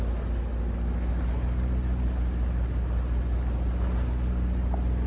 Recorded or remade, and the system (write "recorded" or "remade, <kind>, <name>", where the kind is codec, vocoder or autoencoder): recorded